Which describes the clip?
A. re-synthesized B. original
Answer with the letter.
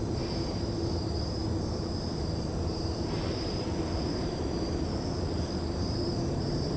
A